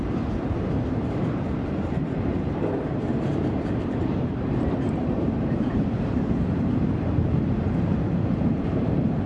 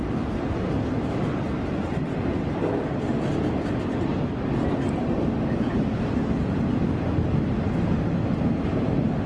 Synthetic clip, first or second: first